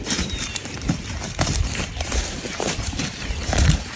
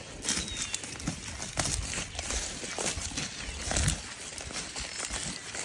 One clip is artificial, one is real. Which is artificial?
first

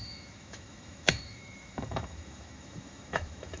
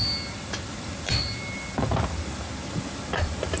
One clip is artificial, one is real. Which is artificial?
first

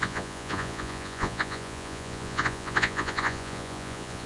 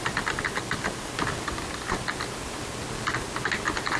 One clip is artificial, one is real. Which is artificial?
first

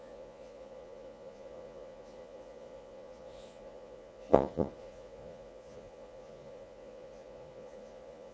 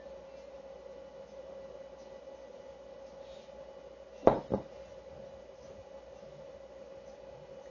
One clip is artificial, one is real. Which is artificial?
first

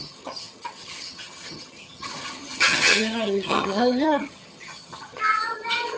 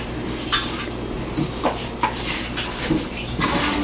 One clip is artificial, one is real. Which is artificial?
first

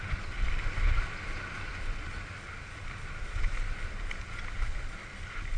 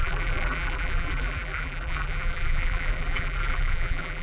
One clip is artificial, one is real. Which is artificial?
second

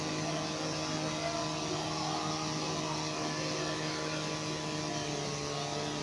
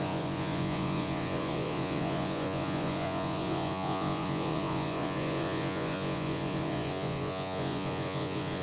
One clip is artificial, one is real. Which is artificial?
second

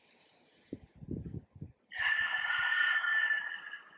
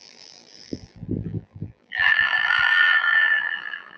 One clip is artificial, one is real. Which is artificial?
second